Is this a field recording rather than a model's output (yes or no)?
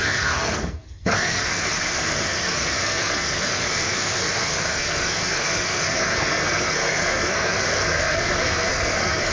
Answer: no